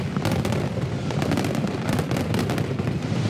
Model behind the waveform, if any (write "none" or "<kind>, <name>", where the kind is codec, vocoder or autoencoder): none